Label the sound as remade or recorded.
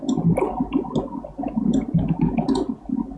recorded